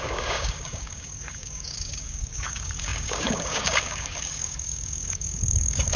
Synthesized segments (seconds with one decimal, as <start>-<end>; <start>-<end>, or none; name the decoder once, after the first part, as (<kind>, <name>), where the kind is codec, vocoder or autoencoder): 0.0-6.0 (codec, DAC)